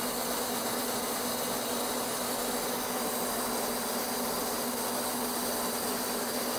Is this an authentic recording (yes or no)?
yes